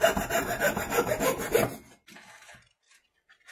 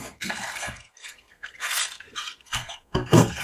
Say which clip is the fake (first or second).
second